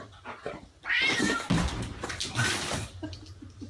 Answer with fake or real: real